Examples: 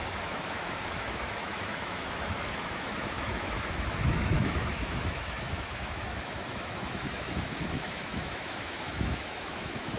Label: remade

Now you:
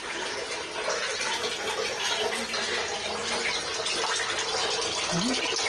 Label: recorded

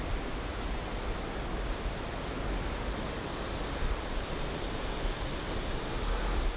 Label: recorded